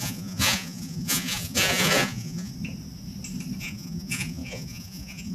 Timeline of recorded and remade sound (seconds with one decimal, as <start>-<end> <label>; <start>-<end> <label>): 0.0-2.5 remade; 2.5-3.6 recorded; 3.6-5.3 remade